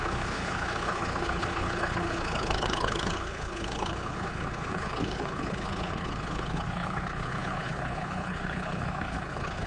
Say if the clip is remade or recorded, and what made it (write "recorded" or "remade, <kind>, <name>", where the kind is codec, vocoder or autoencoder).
remade, codec, HILCodec